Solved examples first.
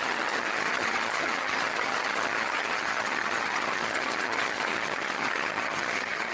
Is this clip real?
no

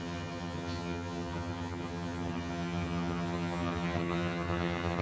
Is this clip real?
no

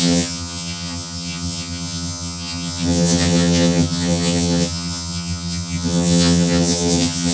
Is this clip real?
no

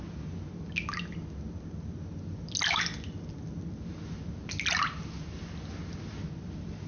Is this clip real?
yes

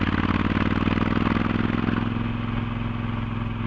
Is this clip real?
yes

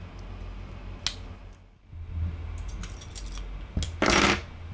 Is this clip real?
yes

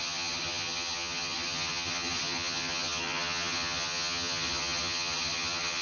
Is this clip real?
no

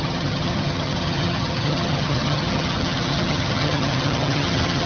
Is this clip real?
no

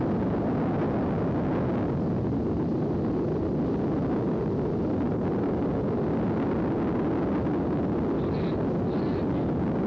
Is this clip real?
yes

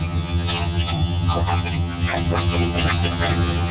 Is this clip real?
no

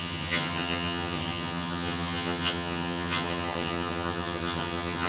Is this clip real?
no